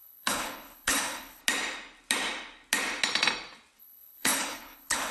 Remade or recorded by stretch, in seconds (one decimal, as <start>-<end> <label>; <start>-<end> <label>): 0.0-1.4 remade; 1.4-3.8 recorded; 3.8-5.1 remade